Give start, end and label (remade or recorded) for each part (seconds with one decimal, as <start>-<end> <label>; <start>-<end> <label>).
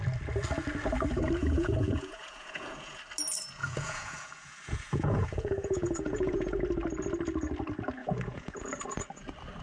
0.0-1.4 recorded; 1.4-3.0 remade; 3.0-3.6 recorded; 3.6-6.6 remade; 6.6-8.0 recorded; 8.0-8.7 remade; 8.7-9.6 recorded